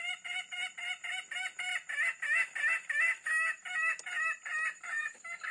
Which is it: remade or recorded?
recorded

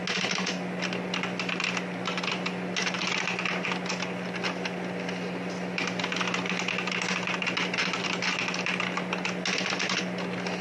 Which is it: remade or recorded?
recorded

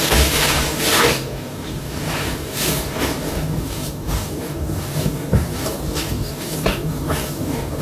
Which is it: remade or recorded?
remade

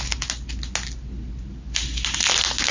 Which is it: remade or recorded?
recorded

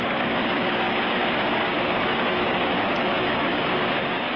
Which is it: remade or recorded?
remade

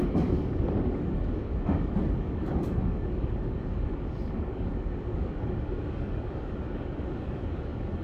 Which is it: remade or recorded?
remade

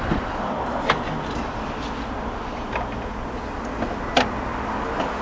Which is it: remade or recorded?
recorded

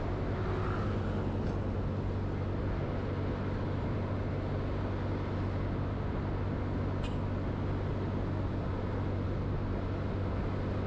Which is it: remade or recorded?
recorded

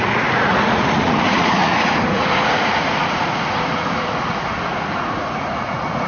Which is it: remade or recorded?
remade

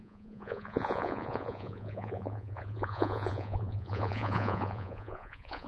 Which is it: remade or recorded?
remade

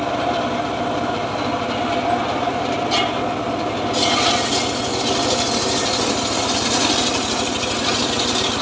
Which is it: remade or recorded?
recorded